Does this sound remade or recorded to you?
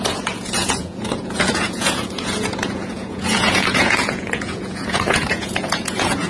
remade